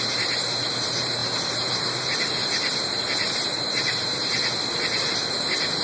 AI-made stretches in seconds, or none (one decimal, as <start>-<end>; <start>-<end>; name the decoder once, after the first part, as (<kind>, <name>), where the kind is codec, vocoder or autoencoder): 0.0-5.8 (vocoder, BigVGAN v2)